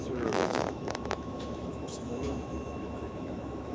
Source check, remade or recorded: remade